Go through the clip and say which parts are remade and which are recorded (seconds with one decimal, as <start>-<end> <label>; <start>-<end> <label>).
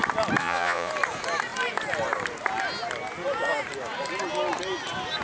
0.0-0.4 recorded; 0.4-0.9 remade; 0.9-5.2 recorded